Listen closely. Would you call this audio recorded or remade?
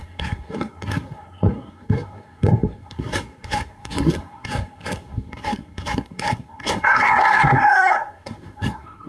remade